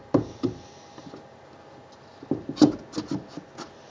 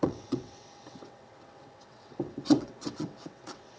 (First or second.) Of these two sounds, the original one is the first